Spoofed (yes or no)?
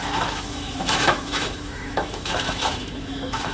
yes